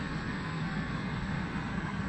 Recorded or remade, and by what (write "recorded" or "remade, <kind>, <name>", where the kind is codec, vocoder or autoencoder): remade, codec, SNAC